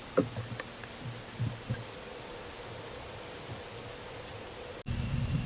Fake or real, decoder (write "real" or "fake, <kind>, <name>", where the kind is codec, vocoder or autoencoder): real